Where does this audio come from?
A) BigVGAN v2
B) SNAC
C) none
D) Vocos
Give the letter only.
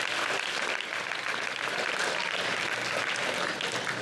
C